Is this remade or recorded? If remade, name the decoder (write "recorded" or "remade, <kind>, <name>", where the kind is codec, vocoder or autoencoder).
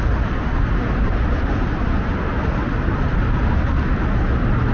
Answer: recorded